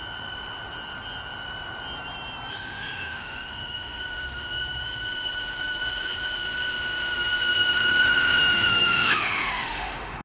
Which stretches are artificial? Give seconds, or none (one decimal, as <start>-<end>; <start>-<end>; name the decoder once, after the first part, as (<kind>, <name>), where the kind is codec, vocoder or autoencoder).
2.5-10.2 (autoencoder, DAC-VAE)